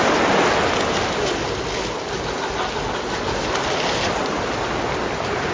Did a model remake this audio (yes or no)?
no